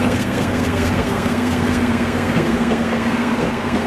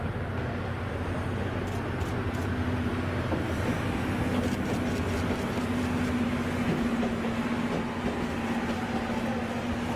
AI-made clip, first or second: first